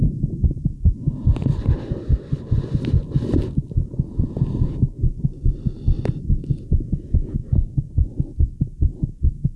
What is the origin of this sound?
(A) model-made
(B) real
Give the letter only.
B